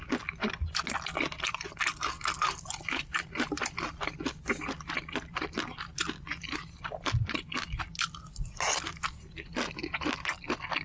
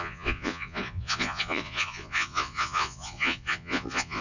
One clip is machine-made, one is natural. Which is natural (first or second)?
first